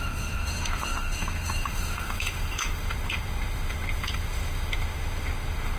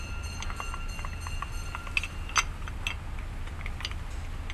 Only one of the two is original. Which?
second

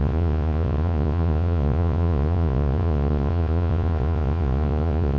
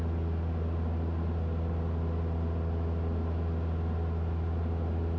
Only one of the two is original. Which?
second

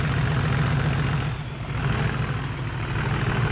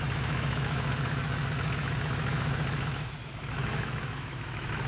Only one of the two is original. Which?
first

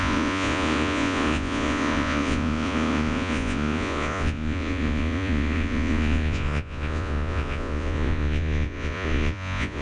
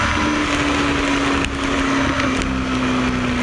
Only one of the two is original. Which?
second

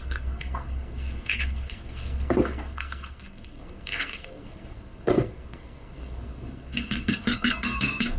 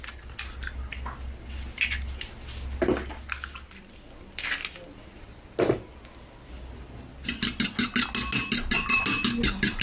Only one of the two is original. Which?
second